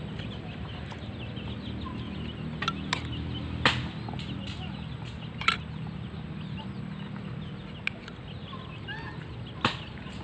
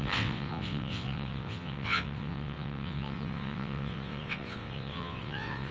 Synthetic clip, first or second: second